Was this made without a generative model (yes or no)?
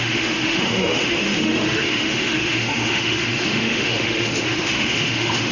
no